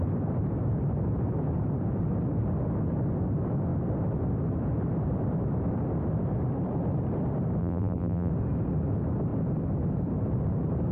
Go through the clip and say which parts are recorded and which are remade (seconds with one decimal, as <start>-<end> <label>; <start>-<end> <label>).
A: 0.0-7.6 recorded; 7.6-8.3 remade; 8.3-10.9 recorded